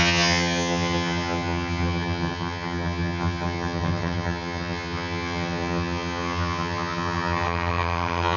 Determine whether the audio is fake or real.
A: fake